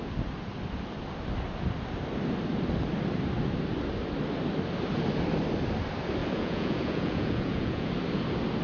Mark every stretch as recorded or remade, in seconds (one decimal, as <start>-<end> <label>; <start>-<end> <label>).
0.0-6.2 recorded; 6.2-7.9 remade; 7.9-8.6 recorded